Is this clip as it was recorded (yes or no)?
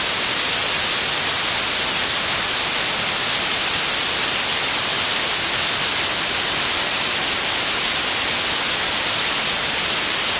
yes